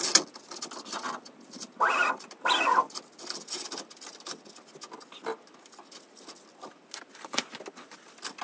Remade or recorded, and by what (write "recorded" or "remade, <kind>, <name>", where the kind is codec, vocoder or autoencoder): recorded